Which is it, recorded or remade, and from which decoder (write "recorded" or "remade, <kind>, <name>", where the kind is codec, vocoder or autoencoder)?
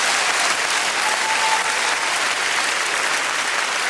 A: recorded